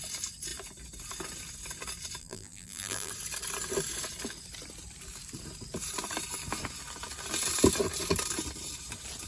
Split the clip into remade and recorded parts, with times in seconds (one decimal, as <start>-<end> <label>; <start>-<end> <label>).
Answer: 0.0-2.2 recorded; 2.2-3.1 remade; 3.1-9.3 recorded